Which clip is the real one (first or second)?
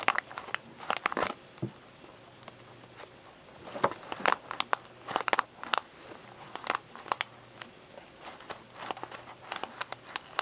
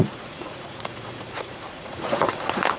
first